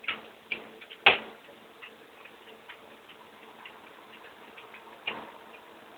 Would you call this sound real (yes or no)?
yes